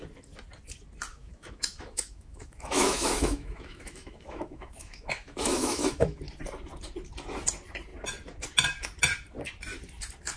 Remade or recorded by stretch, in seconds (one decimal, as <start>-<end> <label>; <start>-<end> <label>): 0.0-1.1 recorded; 1.1-6.2 remade; 6.2-10.4 recorded